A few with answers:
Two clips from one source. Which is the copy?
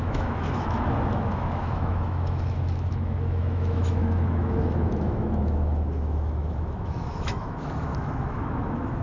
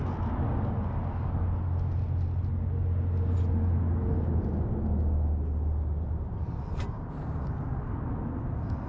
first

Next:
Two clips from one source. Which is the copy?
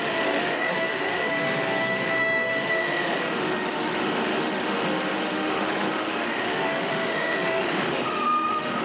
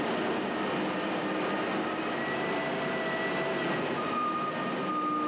first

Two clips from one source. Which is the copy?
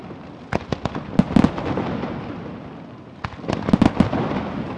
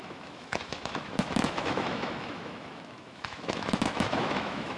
second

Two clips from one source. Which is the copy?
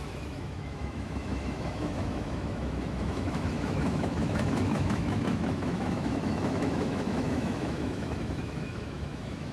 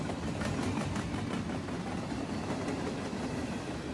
first